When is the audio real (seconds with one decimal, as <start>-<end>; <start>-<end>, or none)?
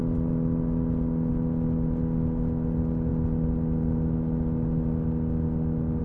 0.0-6.0